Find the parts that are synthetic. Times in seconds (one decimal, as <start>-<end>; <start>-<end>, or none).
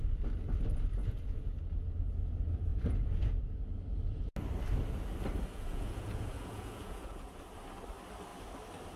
1.0-1.6; 2.7-3.4; 5.5-7.4